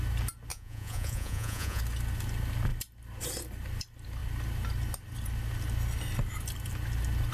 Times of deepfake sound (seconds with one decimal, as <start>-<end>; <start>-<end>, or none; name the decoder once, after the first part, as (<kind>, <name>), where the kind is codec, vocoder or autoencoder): 0.5-1.8 (vocoder, Vocos)

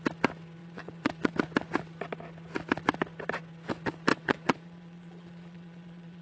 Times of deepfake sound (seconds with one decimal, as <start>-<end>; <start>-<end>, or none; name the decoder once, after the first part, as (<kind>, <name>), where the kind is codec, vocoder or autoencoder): 0.6-1.3 (vocoder, Vocos); 4.1-6.2

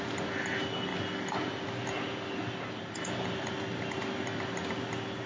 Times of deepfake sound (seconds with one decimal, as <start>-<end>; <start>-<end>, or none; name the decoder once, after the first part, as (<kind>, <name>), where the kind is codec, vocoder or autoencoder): none

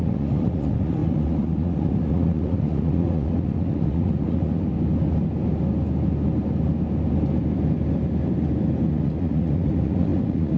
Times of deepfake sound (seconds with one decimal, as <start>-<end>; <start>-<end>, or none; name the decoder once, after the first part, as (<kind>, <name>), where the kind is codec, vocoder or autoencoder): 0.0-4.7 (vocoder, Vocos); 8.9-10.6

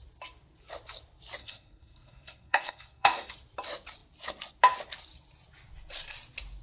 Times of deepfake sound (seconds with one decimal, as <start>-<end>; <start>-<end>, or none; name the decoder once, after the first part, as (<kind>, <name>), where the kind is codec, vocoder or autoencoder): 1.4-3.3 (codec, SNAC)